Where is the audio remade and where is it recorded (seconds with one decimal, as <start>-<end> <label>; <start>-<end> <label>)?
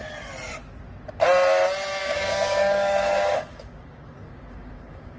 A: 0.0-2.0 recorded; 2.0-5.2 remade